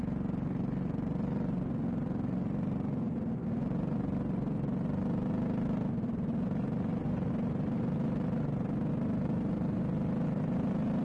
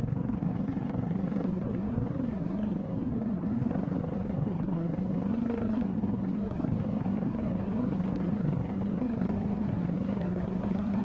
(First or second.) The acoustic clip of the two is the first